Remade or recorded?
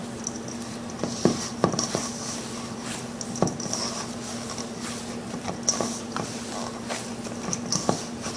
recorded